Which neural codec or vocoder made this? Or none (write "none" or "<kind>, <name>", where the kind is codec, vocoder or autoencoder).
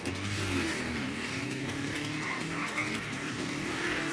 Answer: codec, DAC